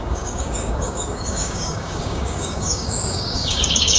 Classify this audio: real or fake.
fake